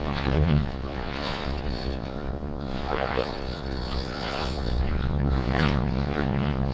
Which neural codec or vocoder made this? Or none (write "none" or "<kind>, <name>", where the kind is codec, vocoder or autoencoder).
vocoder, Vocos